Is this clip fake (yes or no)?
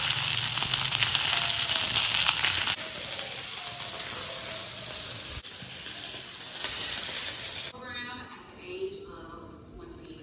no